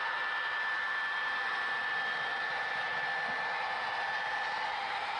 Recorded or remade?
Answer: recorded